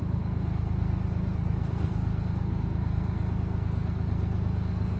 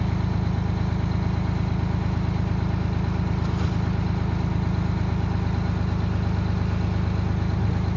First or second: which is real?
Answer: second